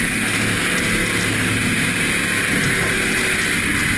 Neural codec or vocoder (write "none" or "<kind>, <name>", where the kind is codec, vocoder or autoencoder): none